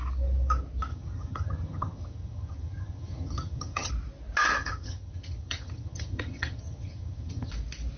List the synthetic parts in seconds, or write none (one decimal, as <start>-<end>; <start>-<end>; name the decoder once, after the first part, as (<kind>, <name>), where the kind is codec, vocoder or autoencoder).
0.9-3.9 (vocoder, HiFi-GAN); 4.6-7.5